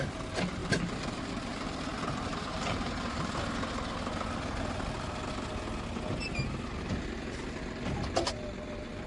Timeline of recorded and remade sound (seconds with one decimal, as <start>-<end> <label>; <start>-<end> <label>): 0.0-0.6 recorded; 0.6-1.8 remade; 1.8-2.3 recorded; 2.3-3.4 remade; 3.4-9.1 recorded